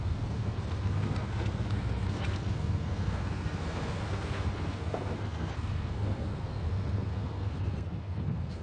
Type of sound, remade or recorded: remade